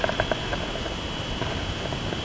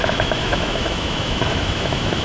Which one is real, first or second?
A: first